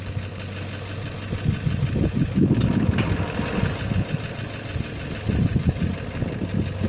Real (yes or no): yes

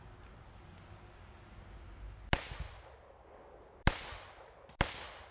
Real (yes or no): yes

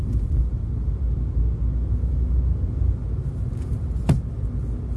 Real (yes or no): yes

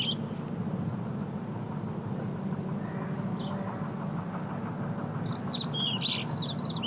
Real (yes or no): yes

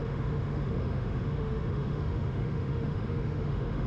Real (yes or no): no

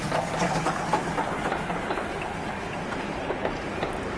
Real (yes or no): yes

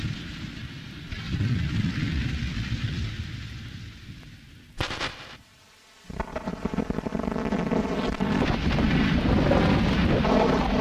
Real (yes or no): yes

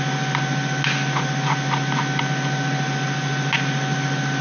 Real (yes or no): yes